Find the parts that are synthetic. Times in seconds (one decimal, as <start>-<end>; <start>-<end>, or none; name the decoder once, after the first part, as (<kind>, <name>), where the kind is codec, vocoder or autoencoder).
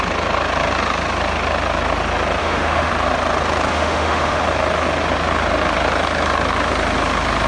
2.4-2.9 (autoencoder, DAC-VAE); 3.7-4.4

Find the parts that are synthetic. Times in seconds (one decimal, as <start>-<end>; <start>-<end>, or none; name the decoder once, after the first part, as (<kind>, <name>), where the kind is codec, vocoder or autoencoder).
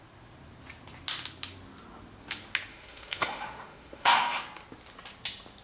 2.7-4.4 (autoencoder, DAC-VAE)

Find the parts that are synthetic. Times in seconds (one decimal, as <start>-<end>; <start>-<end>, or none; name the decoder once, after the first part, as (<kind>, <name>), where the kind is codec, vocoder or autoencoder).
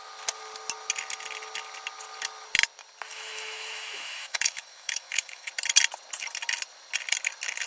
3.1-5.5 (autoencoder, DAC-VAE)